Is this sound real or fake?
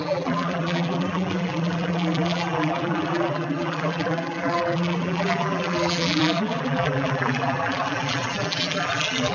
fake